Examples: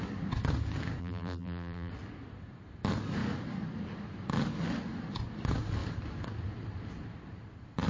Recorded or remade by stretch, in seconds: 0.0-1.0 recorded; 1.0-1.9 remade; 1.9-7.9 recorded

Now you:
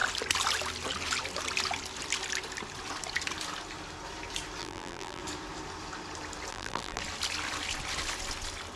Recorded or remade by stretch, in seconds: 0.0-4.6 recorded; 4.6-5.2 remade; 5.2-6.5 recorded; 6.5-7.0 remade; 7.0-8.8 recorded

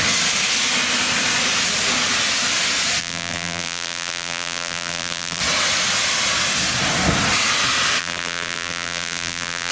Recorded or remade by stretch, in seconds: 0.0-3.0 recorded; 3.0-5.4 remade; 5.4-8.0 recorded; 8.0-9.7 remade

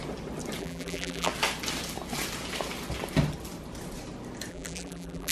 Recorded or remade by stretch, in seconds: 0.0-0.6 recorded; 0.6-1.3 remade; 1.3-4.5 recorded; 4.5-5.3 remade